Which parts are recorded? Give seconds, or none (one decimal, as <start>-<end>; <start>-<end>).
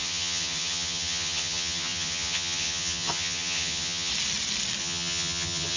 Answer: 4.1-4.8